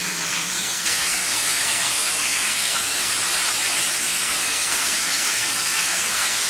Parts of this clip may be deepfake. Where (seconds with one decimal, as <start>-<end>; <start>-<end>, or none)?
0.0-3.1; 4.0-6.5